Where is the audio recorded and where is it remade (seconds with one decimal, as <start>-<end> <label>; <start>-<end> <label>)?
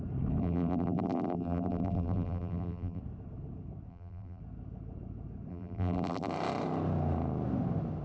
0.0-0.4 recorded; 0.4-3.0 remade; 3.0-3.9 recorded; 3.9-4.4 remade; 4.4-5.5 recorded; 5.5-6.3 remade; 6.3-8.0 recorded